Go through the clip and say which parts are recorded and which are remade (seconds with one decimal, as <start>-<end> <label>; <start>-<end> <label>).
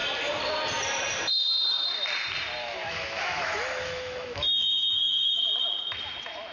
0.0-2.6 recorded; 2.6-5.4 remade; 5.4-6.5 recorded